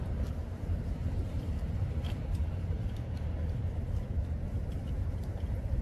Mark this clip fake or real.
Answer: fake